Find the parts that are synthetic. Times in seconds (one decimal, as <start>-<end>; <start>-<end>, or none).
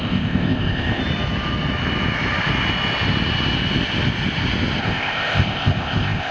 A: 0.0-1.0; 4.8-6.3